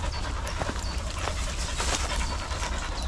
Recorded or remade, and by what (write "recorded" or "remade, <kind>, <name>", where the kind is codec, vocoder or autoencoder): recorded